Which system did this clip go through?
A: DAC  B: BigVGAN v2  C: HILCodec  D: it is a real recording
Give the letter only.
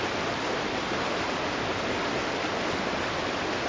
D